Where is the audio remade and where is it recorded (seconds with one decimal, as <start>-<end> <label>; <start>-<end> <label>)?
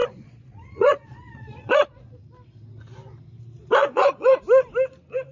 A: 0.0-2.2 remade; 2.2-3.8 recorded; 3.8-4.4 remade; 4.4-5.3 recorded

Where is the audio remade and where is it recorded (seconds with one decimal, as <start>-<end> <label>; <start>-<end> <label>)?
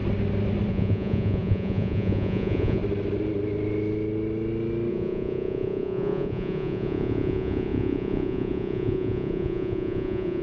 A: 0.0-0.7 recorded; 0.7-2.8 remade; 2.8-4.9 recorded; 4.9-10.4 remade